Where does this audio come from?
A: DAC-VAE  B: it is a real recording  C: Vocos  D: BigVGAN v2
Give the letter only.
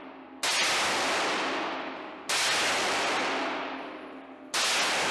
B